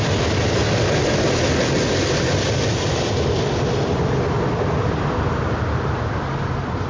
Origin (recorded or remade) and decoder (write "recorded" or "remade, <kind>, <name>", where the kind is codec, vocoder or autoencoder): recorded